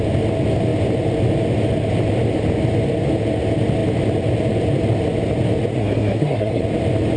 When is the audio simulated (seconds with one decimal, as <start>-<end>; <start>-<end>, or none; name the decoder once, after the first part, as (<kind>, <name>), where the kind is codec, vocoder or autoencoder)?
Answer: 5.7-6.6 (codec, SNAC)